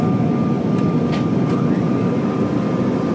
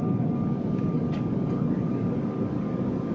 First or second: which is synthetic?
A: second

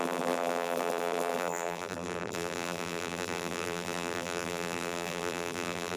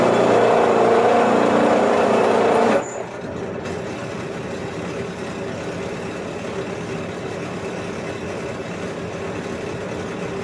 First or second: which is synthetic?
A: first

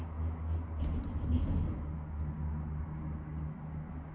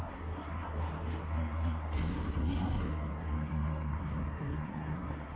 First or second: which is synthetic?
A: second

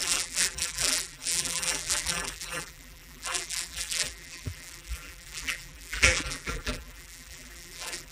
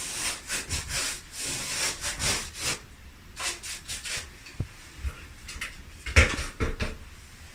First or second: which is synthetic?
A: first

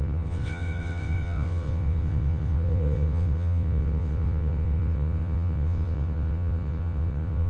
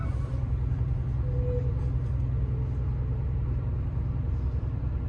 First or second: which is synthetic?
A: first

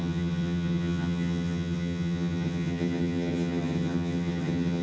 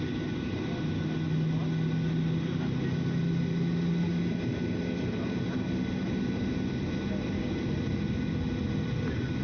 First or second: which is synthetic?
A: first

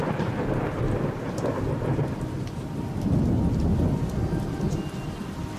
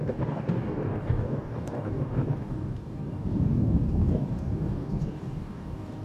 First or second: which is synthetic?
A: second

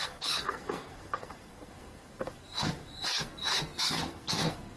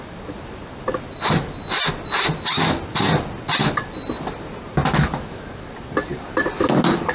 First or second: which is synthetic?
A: first